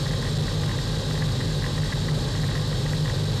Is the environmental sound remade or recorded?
recorded